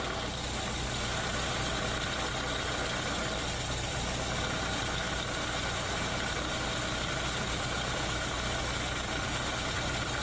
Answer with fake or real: real